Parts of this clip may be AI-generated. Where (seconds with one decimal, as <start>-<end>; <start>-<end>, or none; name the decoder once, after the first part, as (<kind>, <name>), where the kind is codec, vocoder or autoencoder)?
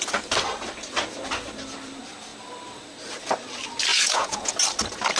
3.9-4.5 (vocoder, Vocos)